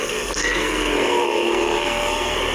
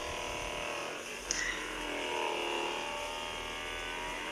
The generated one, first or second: first